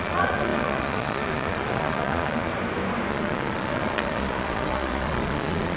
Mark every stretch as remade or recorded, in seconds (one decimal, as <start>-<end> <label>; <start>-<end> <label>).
0.0-2.5 remade; 2.5-3.1 recorded; 3.1-5.8 remade